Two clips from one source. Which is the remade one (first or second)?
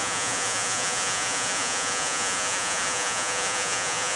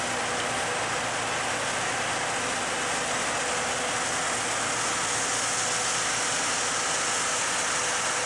first